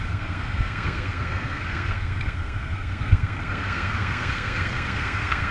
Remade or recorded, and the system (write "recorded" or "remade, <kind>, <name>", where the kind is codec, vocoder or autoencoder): remade, codec, SNAC